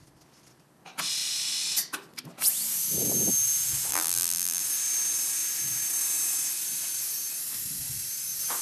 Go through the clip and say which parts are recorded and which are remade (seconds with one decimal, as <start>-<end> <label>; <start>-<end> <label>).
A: 0.0-3.9 recorded; 3.9-4.6 remade; 4.6-8.6 recorded